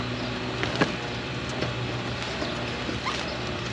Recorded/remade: recorded